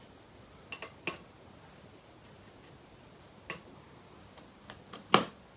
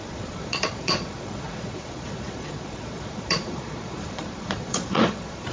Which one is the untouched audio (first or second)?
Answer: first